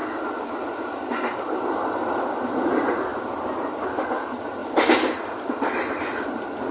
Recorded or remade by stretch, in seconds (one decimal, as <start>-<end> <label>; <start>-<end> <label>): 0.0-3.1 recorded; 3.1-3.7 remade; 3.7-6.7 recorded